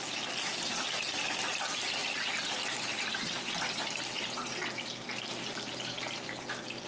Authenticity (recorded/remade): recorded